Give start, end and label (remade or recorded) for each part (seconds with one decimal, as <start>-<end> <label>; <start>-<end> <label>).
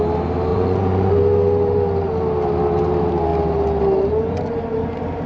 0.0-0.5 recorded; 0.5-1.1 remade; 1.1-5.3 recorded